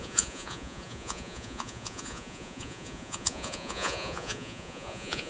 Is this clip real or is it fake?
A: fake